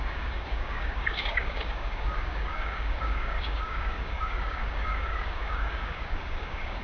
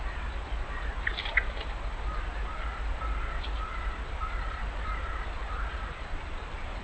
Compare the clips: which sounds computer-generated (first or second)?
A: first